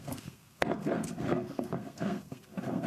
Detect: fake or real fake